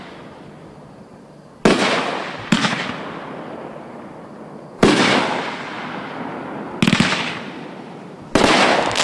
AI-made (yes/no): no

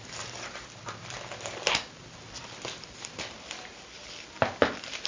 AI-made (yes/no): no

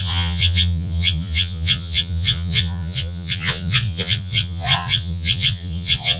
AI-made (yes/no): yes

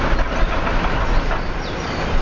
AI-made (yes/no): no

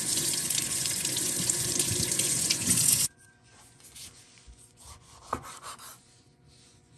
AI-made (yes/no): yes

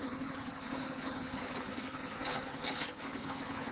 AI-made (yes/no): yes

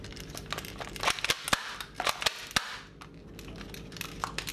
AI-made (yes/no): no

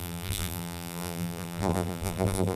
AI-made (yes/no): yes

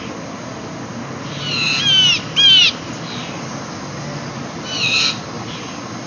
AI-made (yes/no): no